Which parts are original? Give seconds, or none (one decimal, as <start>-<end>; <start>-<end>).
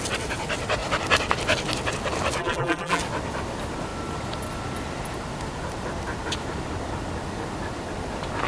0.0-2.4; 3.0-8.5